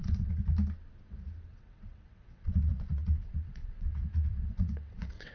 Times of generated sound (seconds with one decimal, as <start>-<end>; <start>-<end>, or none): 0.0-0.4; 1.5-5.3